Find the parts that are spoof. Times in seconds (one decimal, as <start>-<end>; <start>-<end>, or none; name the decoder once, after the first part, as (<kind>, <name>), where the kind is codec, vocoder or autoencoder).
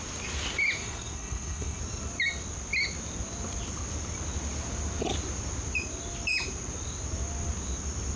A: 0.8-1.8 (codec, SNAC)